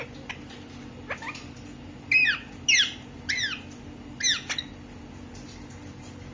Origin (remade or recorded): recorded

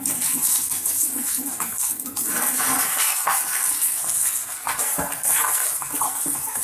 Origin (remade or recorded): remade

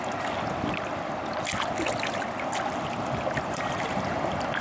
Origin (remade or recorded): recorded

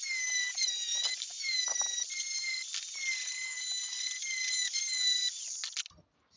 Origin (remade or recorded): recorded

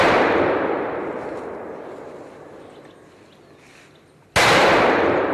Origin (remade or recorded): recorded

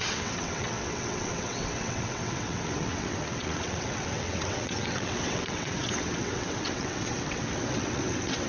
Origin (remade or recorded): remade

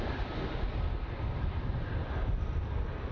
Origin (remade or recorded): recorded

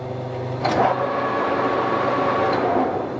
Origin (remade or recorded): recorded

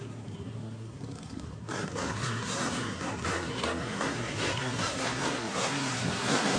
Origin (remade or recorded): remade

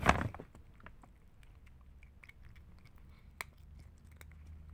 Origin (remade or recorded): recorded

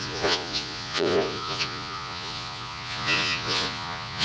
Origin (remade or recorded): remade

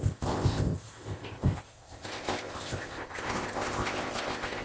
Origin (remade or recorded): remade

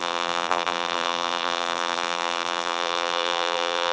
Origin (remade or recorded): remade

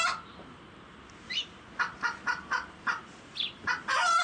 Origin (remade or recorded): recorded